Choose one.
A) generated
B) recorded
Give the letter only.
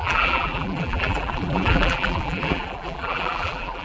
A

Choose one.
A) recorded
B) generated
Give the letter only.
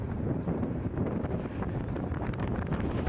B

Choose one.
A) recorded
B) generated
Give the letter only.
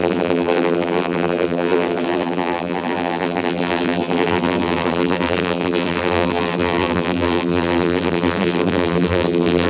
B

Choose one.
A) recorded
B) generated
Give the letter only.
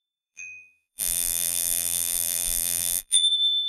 B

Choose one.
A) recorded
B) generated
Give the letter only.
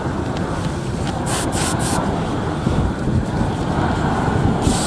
B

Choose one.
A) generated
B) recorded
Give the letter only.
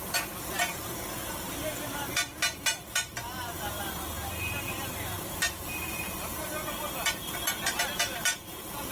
A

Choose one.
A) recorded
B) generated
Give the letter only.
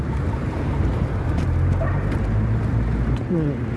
B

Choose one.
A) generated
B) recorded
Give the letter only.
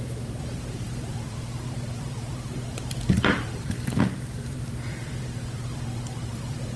A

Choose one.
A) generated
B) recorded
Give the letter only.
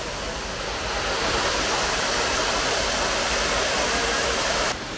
B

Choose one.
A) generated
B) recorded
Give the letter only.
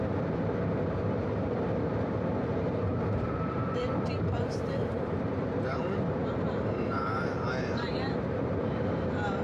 A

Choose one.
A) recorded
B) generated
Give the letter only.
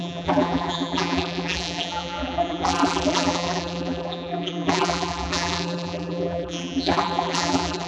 B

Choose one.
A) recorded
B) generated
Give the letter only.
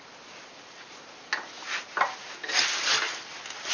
A